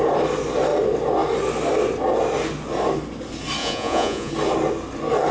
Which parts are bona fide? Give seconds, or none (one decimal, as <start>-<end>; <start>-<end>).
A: 0.0-3.6; 4.3-5.3